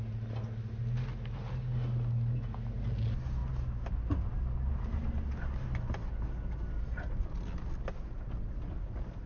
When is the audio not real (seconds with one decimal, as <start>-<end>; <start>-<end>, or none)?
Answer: none